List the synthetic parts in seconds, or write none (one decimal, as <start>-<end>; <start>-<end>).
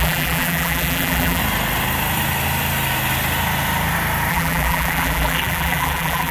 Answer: 0.0-1.4; 4.3-6.3